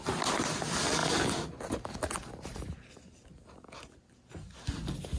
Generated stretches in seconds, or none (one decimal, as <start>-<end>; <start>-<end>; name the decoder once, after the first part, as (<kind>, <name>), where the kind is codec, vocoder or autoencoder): none

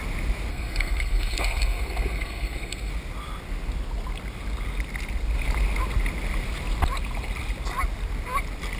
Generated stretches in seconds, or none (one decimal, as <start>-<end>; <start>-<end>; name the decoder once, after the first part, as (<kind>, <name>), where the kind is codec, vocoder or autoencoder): 0.5-2.9 (codec, SNAC)

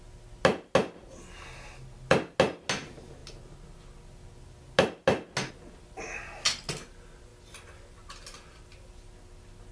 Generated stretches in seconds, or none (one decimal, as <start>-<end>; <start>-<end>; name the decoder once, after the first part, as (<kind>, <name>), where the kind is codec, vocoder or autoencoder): none

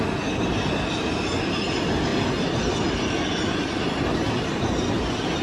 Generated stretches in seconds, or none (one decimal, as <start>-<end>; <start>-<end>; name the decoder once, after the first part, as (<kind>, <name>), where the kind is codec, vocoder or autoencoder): none

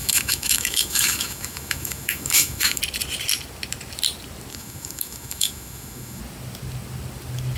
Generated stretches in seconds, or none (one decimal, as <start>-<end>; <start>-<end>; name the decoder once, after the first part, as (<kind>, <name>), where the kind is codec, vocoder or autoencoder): 0.0-2.8 (autoencoder, DAC-VAE); 4.5-6.2